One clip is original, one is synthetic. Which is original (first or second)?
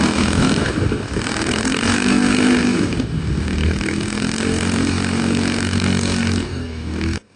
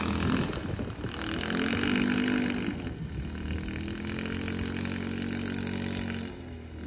second